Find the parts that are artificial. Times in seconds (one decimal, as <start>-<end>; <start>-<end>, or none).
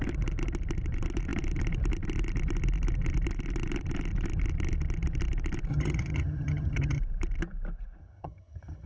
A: 5.7-7.0; 8.0-8.9